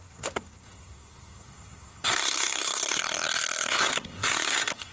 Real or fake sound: fake